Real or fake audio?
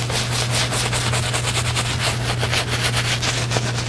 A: real